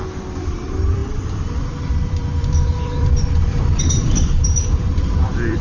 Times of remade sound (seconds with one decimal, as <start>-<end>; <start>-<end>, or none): 0.0-5.6